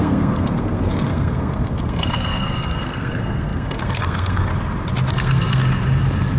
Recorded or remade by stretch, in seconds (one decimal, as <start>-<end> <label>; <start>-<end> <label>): 0.0-4.5 remade; 4.5-5.1 recorded; 5.1-5.6 remade; 5.6-6.4 recorded